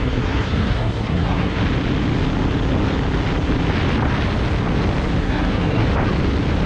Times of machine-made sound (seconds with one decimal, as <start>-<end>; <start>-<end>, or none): 0.0-1.6; 5.2-5.8